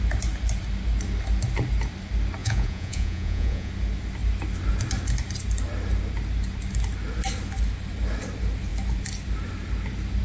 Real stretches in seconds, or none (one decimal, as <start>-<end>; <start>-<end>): 0.0-2.4; 3.7-10.2

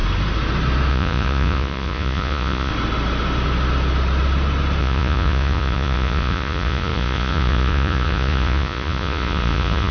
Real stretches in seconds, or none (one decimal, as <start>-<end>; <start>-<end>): 0.0-0.9; 2.7-4.8

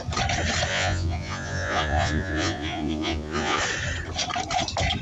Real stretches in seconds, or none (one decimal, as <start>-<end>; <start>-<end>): 0.0-0.7; 3.6-5.0

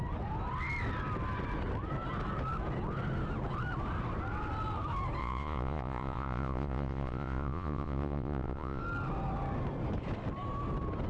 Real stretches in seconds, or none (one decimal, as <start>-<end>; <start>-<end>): 0.0-5.2; 8.8-11.1

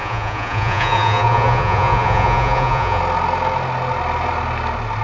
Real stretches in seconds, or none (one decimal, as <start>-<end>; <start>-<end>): 3.0-5.0

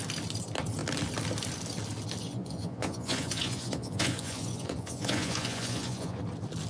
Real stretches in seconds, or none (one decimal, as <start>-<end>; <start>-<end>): 0.0-2.2; 6.2-6.7

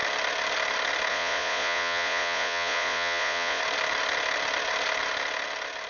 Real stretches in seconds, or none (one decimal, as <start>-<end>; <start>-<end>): 0.0-1.1; 3.6-5.9